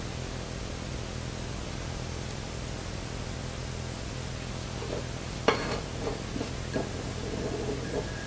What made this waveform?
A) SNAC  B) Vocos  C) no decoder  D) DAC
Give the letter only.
C